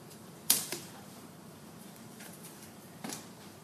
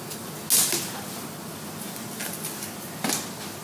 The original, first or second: second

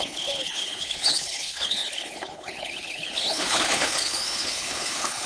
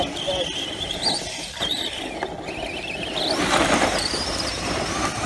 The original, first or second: second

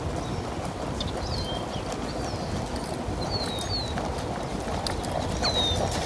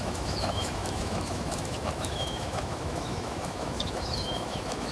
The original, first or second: first